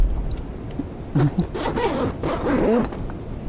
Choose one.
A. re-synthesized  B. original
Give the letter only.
B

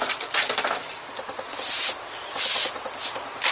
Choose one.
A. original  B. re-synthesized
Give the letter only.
A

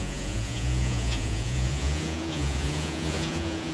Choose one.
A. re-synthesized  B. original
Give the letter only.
A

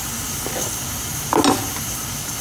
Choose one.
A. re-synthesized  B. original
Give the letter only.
B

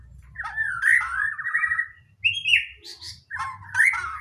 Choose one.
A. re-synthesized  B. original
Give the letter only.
B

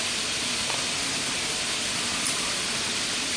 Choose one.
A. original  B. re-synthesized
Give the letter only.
A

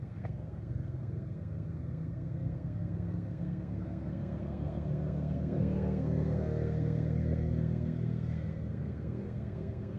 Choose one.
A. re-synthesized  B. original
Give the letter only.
A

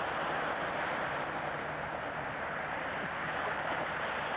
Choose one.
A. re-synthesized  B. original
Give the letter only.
B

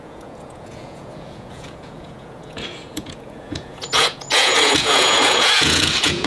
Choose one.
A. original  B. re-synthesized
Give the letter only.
B